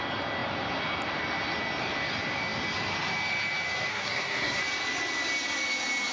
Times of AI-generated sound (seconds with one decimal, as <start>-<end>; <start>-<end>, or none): 3.9-4.6